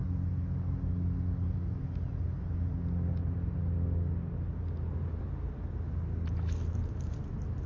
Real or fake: real